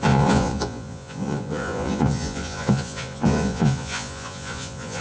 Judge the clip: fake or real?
fake